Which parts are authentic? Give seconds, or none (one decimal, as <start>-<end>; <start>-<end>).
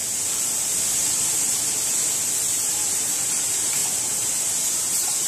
0.0-2.9